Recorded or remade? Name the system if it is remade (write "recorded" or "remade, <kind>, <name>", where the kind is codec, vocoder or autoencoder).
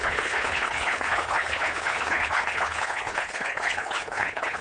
remade, codec, HILCodec